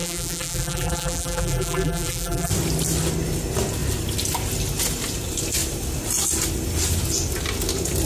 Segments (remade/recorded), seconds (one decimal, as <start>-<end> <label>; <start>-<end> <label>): 0.0-2.5 remade; 2.5-8.1 recorded